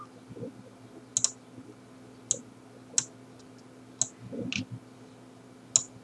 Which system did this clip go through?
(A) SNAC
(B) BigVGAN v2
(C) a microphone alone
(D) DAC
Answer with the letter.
C